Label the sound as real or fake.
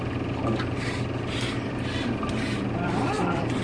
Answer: fake